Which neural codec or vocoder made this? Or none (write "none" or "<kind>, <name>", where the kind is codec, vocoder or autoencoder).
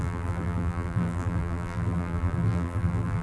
vocoder, BigVGAN v2